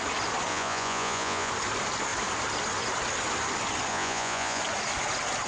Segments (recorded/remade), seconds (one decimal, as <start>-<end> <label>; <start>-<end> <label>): 0.0-0.5 recorded; 0.5-1.5 remade; 1.5-3.9 recorded; 3.9-4.6 remade; 4.6-5.5 recorded